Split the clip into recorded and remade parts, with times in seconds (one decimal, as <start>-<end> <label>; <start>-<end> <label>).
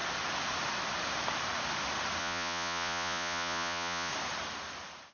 0.0-2.2 recorded; 2.2-4.1 remade; 4.1-5.1 recorded